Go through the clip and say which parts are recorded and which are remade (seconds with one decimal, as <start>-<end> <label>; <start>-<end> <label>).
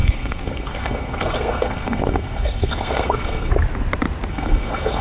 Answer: 0.0-3.5 remade; 3.5-4.3 recorded; 4.3-5.0 remade